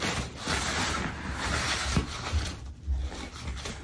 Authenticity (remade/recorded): recorded